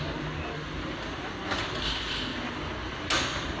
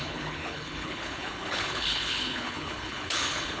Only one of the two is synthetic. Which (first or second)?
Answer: second